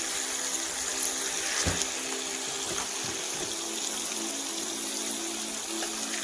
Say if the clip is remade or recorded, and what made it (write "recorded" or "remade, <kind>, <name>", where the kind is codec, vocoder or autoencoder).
recorded